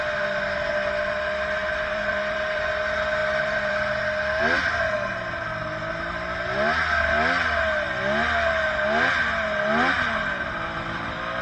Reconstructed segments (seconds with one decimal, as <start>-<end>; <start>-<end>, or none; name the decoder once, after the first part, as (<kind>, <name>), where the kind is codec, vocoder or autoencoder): 1.6-2.6 (vocoder, BigVGAN v2); 3.2-4.0

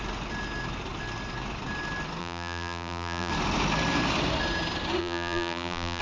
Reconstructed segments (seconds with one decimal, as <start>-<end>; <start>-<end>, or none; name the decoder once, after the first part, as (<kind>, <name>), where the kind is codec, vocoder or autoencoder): 2.2-3.3 (vocoder, BigVGAN v2); 5.0-6.0

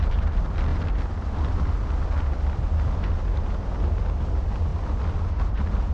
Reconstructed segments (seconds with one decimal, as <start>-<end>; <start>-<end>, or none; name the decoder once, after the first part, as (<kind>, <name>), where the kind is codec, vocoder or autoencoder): 0.0-0.7 (vocoder, BigVGAN v2); 4.2-4.7; 5.5-5.9

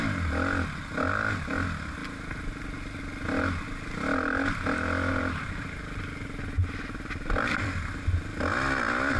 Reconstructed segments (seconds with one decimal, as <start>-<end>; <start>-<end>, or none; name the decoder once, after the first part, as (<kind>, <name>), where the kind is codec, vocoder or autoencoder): 6.6-7.8 (vocoder, BigVGAN v2)

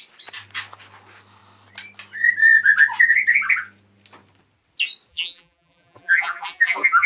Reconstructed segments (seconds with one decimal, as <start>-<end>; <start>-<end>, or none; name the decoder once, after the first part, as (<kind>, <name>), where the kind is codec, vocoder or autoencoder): 5.1-7.1 (vocoder, BigVGAN v2)

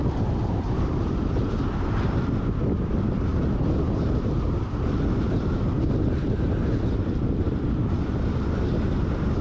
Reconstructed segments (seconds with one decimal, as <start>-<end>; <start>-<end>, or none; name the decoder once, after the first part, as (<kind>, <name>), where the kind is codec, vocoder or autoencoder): 0.0-3.3 (vocoder, BigVGAN v2); 6.8-9.4